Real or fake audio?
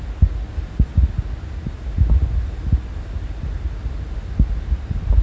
real